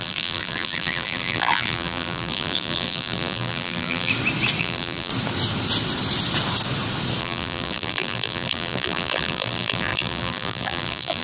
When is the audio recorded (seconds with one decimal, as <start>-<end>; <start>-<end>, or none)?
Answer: 4.1-4.6; 5.1-7.2